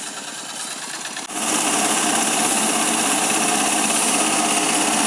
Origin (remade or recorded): recorded